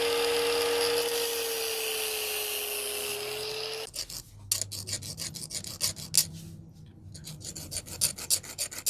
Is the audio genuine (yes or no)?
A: yes